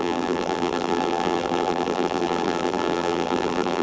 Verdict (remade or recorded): remade